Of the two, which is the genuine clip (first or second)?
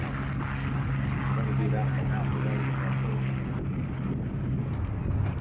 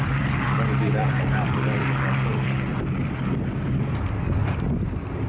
first